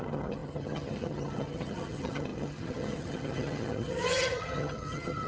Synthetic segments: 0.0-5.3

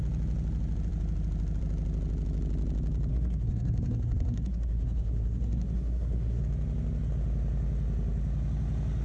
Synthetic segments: 3.1-6.4

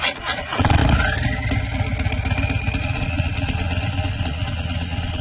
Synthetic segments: 0.0-0.8; 2.8-5.2

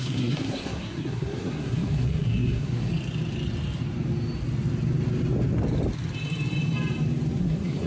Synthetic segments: 0.0-2.9; 7.4-7.9

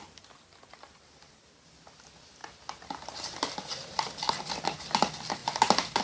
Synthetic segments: none

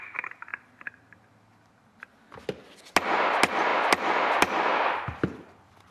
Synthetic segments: none

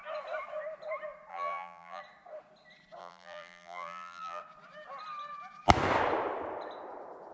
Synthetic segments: 1.3-2.0; 3.0-4.4